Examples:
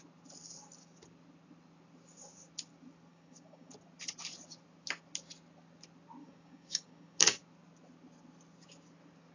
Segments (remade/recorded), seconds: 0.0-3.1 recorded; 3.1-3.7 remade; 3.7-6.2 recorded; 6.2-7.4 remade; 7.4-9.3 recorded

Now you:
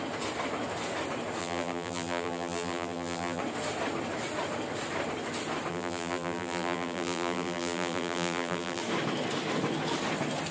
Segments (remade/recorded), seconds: 0.0-1.4 recorded; 1.4-3.4 remade; 3.4-5.7 recorded; 5.7-8.8 remade; 8.8-10.5 recorded